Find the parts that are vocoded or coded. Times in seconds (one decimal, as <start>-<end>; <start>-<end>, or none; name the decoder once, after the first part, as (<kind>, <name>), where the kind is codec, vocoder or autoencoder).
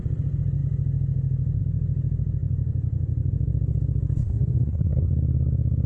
4.2-5.1 (codec, SNAC)